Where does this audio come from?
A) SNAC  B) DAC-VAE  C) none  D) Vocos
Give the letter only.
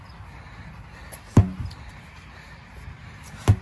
C